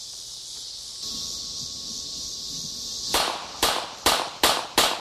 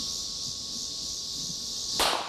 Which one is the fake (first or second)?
first